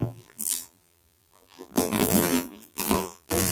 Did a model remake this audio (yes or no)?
yes